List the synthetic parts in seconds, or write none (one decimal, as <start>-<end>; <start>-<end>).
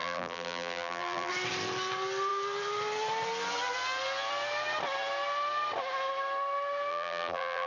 0.0-1.3; 6.9-7.7